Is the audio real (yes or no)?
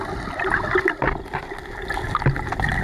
yes